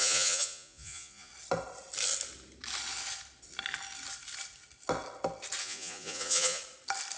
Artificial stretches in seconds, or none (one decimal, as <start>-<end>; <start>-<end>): 0.0-1.3; 5.6-6.6